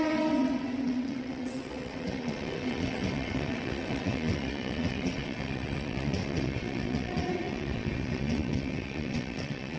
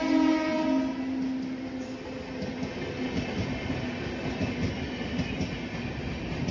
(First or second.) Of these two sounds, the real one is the second